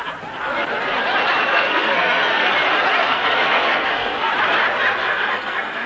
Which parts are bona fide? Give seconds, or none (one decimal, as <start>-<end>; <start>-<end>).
0.0-1.5; 2.5-3.0; 4.3-5.0